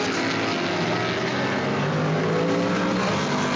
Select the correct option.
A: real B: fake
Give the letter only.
A